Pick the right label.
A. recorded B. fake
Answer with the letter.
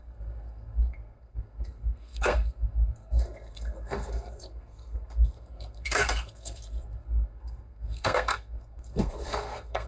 B